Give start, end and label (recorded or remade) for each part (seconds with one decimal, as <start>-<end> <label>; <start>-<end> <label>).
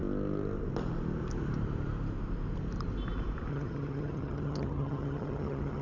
0.0-3.5 recorded; 3.5-5.8 remade